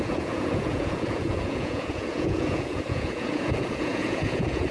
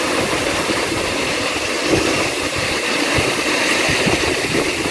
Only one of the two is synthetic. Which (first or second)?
first